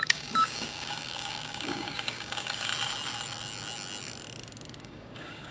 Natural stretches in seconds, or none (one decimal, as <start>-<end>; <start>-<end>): 2.7-4.8